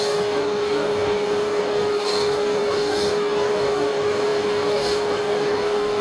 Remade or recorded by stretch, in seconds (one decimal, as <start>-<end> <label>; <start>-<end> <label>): 0.0-6.0 remade